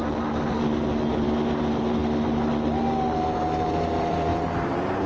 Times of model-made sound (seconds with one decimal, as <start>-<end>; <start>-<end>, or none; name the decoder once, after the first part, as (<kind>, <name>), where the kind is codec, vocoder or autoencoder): 1.1-2.0 (vocoder, BigVGAN v2); 3.7-5.1